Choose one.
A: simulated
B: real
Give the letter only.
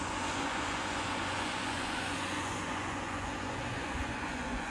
A